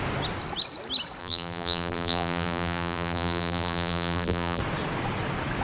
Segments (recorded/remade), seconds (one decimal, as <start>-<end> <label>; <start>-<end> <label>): 0.0-1.2 recorded; 1.2-4.6 remade; 4.6-5.6 recorded